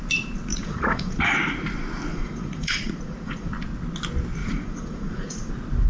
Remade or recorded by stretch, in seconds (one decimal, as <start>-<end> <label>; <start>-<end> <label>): 0.0-0.5 recorded; 0.5-1.2 remade; 1.2-2.1 recorded; 2.1-3.5 remade; 3.5-4.4 recorded; 4.4-5.5 remade; 5.5-5.9 recorded